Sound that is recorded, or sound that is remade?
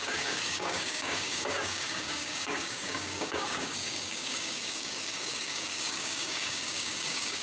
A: remade